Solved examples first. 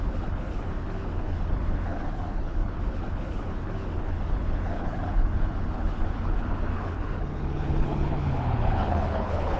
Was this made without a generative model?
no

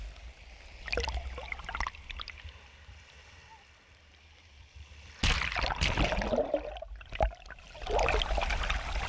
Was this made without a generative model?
yes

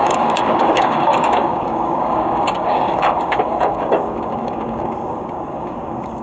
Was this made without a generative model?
no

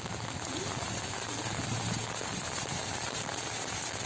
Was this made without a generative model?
yes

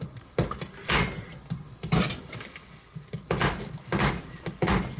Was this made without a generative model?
yes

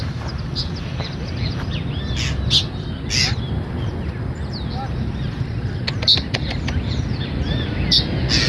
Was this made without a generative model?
yes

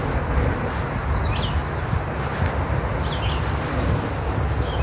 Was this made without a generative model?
yes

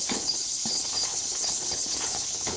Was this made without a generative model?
no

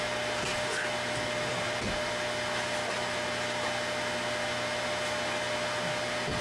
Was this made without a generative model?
yes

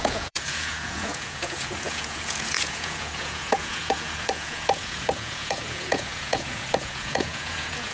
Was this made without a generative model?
no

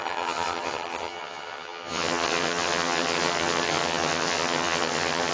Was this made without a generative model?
no